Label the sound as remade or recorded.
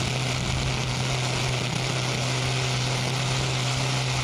recorded